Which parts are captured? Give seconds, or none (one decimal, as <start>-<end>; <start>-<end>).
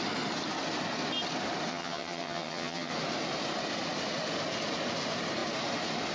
0.0-1.7; 2.9-6.1